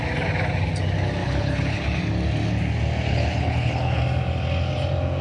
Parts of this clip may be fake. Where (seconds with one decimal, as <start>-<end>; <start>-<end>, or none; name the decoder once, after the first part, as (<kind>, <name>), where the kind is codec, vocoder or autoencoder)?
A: 1.2-2.0 (codec, HILCodec); 3.1-4.0